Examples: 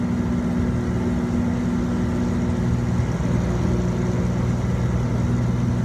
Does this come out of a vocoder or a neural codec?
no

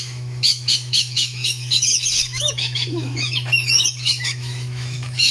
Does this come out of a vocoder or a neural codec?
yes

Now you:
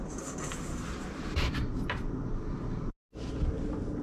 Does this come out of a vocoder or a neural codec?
no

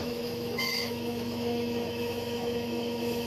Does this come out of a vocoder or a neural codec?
yes